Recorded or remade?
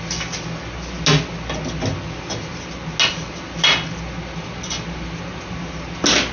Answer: recorded